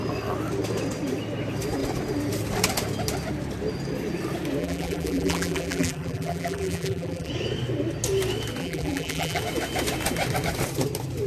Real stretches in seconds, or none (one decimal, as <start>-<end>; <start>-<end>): 0.0-4.6; 7.3-8.6; 9.4-11.3